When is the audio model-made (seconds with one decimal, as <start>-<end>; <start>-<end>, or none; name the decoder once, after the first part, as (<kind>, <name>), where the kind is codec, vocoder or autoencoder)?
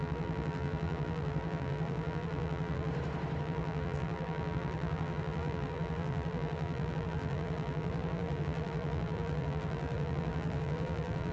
0.0-2.9 (vocoder, BigVGAN v2); 3.4-11.3